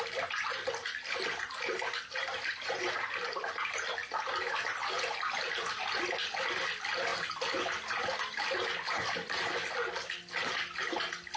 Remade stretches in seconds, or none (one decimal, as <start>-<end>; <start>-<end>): none